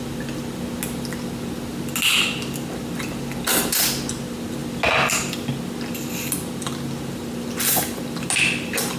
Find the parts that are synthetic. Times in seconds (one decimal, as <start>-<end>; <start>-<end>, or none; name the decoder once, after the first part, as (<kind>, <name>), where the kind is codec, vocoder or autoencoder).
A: none